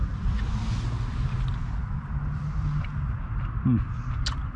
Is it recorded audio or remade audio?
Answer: recorded